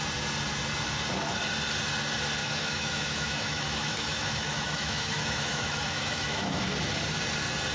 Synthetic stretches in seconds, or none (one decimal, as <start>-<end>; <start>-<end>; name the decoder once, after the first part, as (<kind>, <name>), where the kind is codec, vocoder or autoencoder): 2.4-6.6 (autoencoder, DAC-VAE)